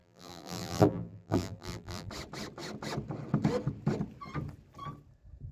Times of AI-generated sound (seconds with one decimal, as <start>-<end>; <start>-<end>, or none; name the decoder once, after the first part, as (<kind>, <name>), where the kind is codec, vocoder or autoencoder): 0.0-2.1 (vocoder, BigVGAN v2)